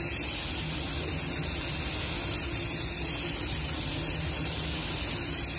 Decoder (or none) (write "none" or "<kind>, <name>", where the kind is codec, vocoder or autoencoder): none